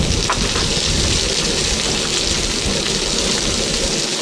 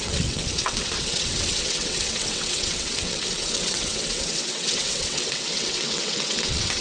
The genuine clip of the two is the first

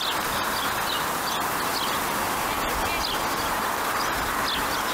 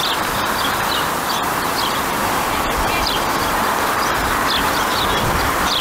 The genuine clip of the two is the first